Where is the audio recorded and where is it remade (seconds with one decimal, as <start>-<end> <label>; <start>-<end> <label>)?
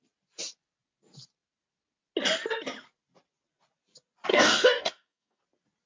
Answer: 0.0-4.3 recorded; 4.3-5.4 remade; 5.4-5.9 recorded